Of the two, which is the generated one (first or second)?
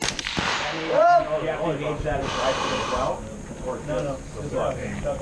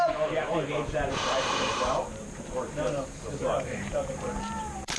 second